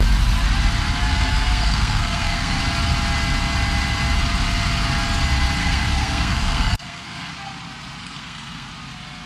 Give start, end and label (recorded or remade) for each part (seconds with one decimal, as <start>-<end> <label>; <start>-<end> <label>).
0.0-1.1 recorded; 1.1-2.6 remade; 2.6-5.6 recorded; 5.6-7.3 remade; 7.3-8.0 recorded; 8.0-8.7 remade; 8.7-9.3 recorded